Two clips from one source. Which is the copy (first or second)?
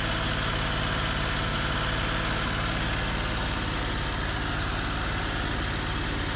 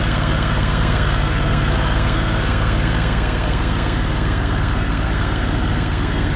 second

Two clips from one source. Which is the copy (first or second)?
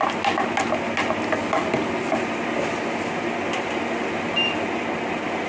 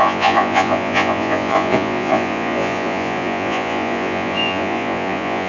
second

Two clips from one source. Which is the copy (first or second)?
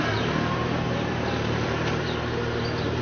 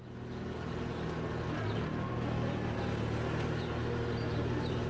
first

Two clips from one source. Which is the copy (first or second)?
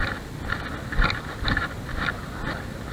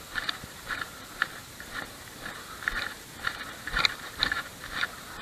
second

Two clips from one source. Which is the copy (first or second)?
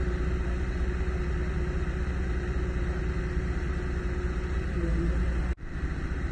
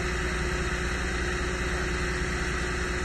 first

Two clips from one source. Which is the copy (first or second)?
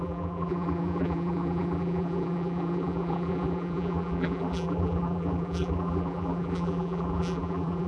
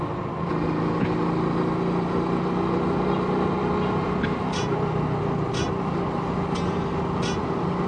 first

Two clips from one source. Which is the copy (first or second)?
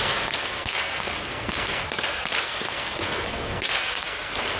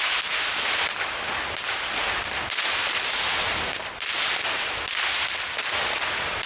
first